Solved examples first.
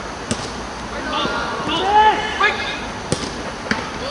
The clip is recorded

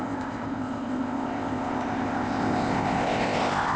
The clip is remade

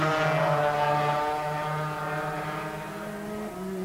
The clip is recorded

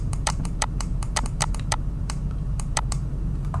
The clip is remade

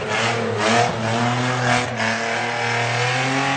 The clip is recorded